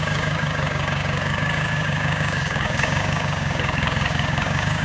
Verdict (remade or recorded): remade